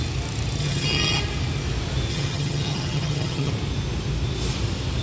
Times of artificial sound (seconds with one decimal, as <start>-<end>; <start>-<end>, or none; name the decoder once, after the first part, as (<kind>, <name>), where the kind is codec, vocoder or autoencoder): 0.6-1.2 (vocoder, HiFi-GAN); 2.1-3.5